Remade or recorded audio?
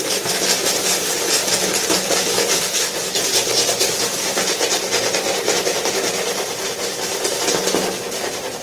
recorded